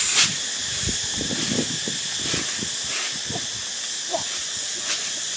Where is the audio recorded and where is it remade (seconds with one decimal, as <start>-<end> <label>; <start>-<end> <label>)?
0.0-4.4 recorded; 4.4-5.4 remade